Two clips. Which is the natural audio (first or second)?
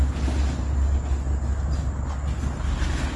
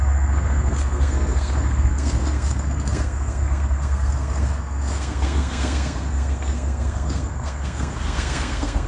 first